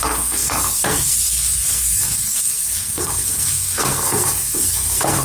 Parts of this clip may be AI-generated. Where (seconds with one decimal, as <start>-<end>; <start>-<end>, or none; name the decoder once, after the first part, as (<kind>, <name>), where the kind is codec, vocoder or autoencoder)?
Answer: 0.0-5.2 (codec, SNAC)